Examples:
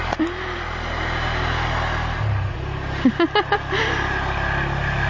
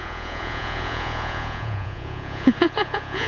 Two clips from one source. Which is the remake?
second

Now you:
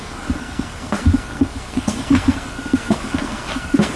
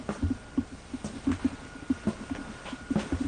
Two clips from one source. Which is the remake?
first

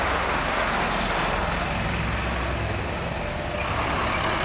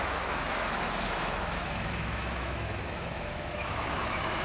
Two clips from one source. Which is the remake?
second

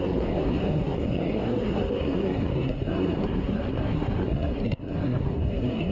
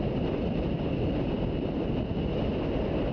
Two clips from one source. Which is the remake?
first